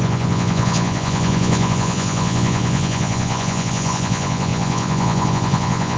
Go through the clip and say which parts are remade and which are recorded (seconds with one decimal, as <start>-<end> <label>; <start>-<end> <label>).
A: 0.0-6.0 remade